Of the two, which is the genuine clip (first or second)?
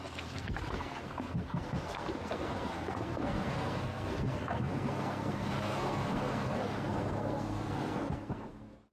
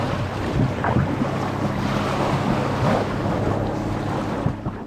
second